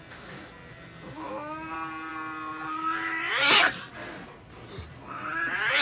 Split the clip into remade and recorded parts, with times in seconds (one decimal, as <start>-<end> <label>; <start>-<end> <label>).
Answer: 0.0-5.8 recorded